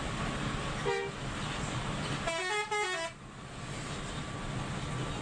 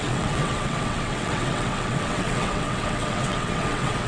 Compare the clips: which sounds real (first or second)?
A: first